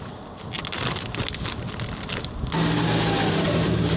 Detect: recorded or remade recorded